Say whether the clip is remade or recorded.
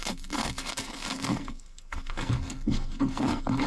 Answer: remade